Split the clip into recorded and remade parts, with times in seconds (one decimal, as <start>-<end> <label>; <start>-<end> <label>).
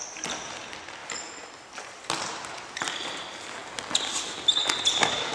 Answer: 0.0-5.3 recorded